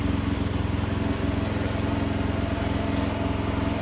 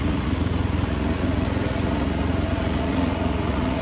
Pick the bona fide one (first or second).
first